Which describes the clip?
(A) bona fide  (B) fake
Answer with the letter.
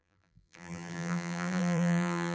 B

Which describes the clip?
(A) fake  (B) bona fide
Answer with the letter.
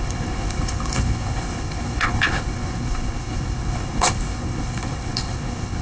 A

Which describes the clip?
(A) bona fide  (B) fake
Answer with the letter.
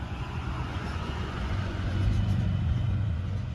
B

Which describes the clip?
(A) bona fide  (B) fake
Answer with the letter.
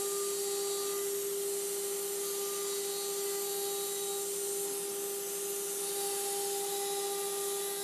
A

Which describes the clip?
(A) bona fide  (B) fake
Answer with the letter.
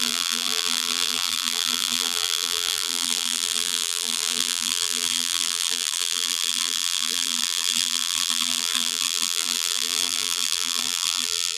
B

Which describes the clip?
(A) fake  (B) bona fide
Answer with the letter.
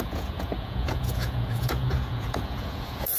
A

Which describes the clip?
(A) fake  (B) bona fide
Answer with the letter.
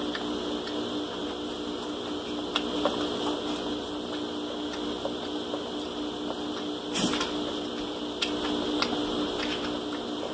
B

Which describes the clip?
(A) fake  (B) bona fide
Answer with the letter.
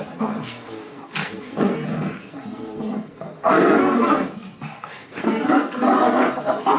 A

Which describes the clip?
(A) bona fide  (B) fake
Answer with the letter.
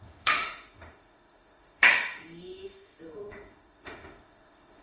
B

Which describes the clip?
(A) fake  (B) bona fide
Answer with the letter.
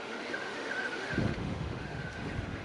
A